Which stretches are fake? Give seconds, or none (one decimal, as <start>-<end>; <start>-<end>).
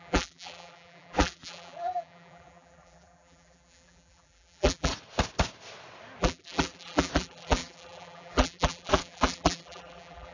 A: 0.0-4.9; 6.2-10.3